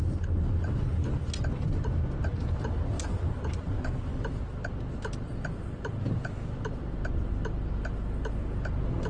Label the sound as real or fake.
real